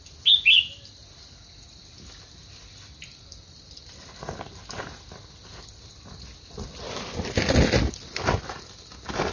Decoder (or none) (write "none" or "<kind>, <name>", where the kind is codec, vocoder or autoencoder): none